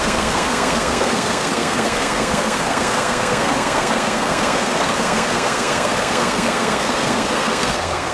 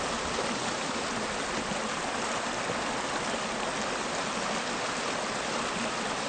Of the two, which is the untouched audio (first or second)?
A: second